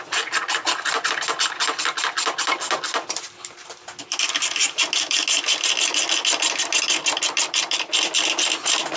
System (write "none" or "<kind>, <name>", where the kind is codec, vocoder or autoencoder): none